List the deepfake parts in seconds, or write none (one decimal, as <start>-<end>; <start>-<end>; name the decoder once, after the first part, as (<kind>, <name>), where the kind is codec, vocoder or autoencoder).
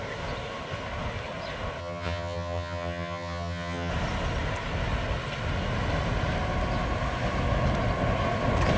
1.8-3.9 (vocoder, HiFi-GAN)